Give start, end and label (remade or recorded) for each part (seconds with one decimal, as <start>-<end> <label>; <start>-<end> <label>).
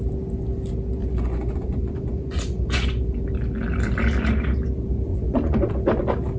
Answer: 0.0-1.0 recorded; 1.0-3.0 remade; 3.0-5.1 recorded; 5.1-5.7 remade; 5.7-6.4 recorded